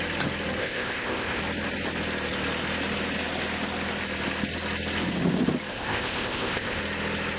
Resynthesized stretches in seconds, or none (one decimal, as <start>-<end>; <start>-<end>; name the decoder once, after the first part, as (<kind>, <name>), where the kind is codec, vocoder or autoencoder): 0.6-1.4 (codec, ZipCodec); 5.7-6.8